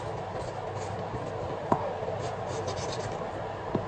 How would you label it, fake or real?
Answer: real